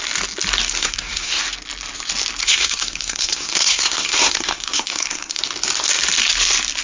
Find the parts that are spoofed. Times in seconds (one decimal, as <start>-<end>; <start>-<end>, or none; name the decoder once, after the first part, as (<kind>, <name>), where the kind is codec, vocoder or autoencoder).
0.8-1.4 (codec, SNAC); 2.4-5.4